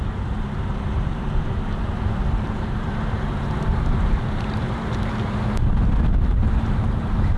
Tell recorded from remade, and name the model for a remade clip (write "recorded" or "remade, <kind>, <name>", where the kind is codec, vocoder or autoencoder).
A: remade, vocoder, BigVGAN v2